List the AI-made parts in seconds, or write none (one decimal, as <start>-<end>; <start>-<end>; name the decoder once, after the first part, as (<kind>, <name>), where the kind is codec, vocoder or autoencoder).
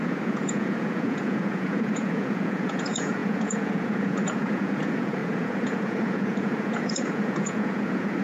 0.0-8.2 (vocoder, Vocos)